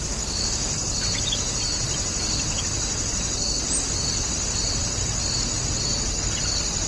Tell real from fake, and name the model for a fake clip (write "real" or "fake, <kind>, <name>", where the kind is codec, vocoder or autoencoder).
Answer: real